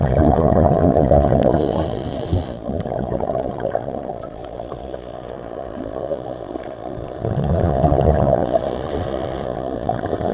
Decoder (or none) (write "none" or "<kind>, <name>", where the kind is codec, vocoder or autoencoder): vocoder, Vocos